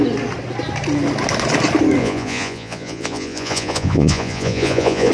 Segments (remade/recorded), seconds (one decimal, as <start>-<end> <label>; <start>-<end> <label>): 0.0-2.0 recorded; 2.0-5.1 remade